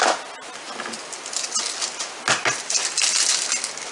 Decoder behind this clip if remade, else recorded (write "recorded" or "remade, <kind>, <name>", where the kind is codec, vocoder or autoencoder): recorded